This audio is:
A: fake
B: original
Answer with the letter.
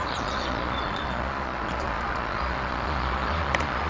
A